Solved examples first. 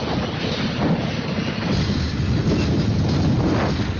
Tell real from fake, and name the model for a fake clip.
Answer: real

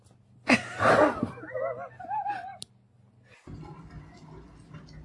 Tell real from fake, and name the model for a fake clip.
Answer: real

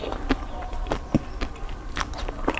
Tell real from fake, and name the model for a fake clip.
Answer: real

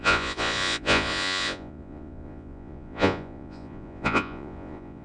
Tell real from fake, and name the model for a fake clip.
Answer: fake, vocoder, Vocos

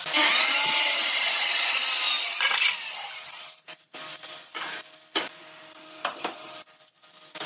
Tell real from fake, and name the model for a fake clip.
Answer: real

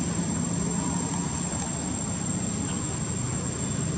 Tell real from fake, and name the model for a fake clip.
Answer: real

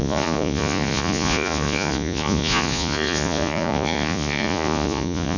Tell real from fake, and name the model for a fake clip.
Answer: fake, vocoder, Vocos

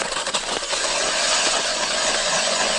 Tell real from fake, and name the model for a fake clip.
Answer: fake, vocoder, Vocos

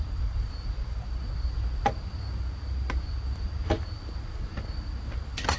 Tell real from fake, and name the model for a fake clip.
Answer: real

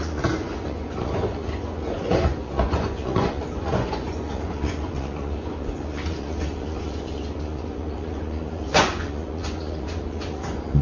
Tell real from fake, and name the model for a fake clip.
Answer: fake, vocoder, Vocos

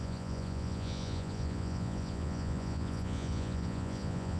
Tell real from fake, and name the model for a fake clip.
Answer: fake, vocoder, Vocos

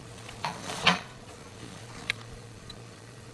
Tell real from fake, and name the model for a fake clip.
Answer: fake, vocoder, Vocos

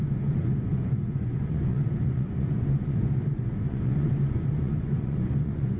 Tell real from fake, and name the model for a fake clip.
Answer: fake, vocoder, Vocos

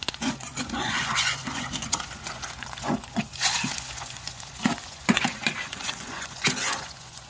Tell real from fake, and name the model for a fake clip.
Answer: fake, vocoder, Vocos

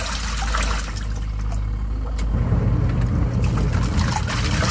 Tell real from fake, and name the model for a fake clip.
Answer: real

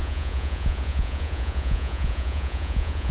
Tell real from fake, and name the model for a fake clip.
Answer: fake, vocoder, Vocos